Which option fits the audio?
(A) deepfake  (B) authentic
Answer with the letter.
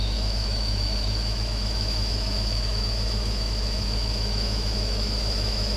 A